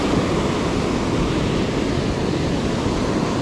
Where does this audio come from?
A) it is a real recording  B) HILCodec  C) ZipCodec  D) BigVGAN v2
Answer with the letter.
A